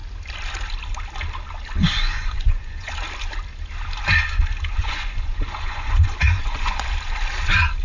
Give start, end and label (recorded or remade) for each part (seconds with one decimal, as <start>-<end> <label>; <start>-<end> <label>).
0.0-1.8 recorded; 1.8-2.9 remade; 2.9-4.8 recorded; 4.8-6.9 remade; 6.9-7.8 recorded